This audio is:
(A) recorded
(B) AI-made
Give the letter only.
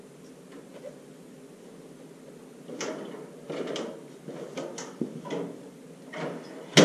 A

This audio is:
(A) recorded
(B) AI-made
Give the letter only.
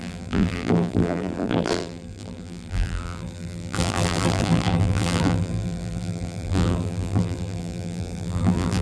B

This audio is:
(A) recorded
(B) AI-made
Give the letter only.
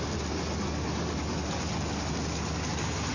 A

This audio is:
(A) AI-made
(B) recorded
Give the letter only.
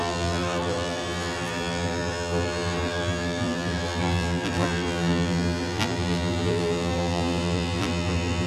A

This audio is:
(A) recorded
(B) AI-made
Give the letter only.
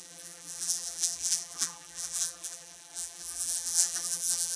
B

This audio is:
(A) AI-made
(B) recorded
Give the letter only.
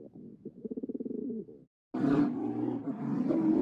B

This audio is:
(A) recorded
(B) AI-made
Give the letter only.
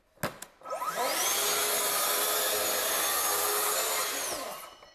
A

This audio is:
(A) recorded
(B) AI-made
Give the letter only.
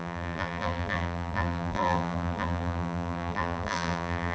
B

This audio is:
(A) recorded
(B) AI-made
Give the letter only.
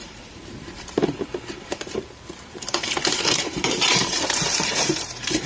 B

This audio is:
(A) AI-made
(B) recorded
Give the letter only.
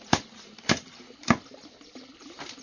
A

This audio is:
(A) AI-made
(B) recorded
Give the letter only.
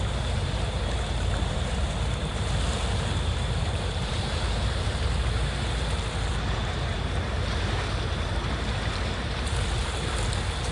A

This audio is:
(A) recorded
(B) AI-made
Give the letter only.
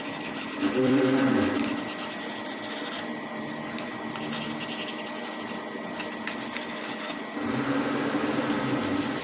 B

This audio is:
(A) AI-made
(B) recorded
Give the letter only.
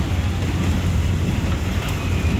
B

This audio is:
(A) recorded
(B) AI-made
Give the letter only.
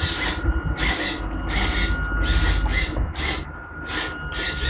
A